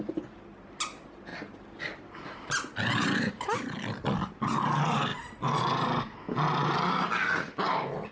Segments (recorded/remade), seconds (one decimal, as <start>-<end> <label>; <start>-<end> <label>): 0.0-8.1 recorded